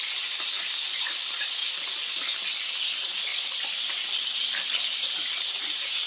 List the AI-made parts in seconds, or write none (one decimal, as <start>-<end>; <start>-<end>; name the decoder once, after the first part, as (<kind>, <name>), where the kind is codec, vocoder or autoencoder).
0.0-1.6 (vocoder, BigVGAN v2); 2.6-3.3; 5.1-6.1